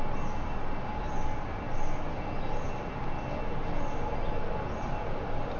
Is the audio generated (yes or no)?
no